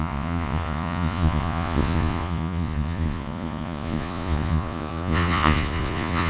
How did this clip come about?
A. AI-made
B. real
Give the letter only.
A